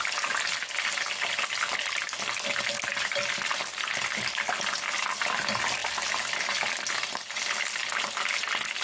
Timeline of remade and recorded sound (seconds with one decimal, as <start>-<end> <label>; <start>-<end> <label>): 0.0-8.8 recorded